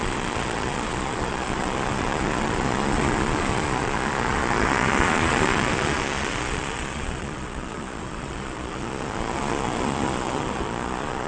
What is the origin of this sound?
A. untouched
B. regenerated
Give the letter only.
B